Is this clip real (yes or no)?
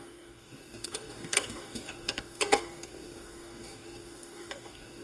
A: no